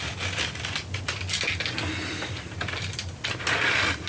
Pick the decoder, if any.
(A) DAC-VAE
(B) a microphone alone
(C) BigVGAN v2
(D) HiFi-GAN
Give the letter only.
B